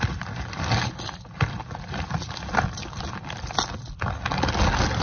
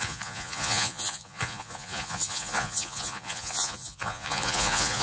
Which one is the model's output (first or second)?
second